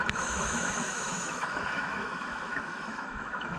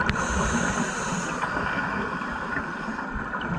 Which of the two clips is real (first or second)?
second